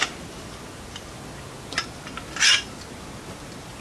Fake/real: real